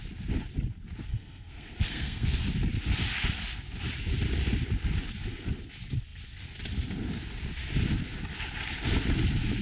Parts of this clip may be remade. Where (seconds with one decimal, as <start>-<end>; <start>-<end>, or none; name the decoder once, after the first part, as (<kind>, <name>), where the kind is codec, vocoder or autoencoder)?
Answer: 1.1-2.5 (codec, SNAC)